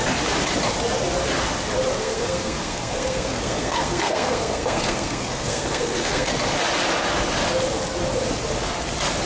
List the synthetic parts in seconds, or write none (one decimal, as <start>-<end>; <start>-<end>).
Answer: 2.0-6.3